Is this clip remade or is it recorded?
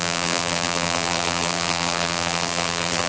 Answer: remade